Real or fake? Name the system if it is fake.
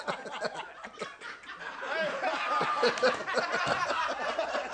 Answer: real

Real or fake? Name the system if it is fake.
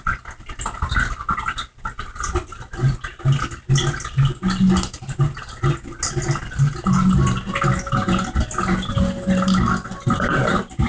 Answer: real